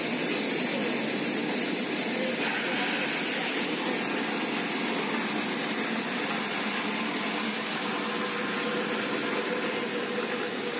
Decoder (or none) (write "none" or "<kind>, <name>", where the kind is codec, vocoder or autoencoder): none